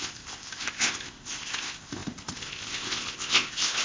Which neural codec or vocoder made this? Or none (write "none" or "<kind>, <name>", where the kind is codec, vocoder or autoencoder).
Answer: codec, ZipCodec